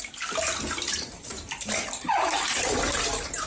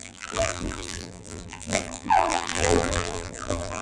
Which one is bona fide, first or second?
first